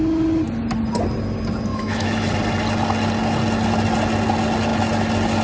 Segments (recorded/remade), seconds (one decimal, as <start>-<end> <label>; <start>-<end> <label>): 0.0-1.7 recorded; 1.7-2.3 remade; 2.3-5.4 recorded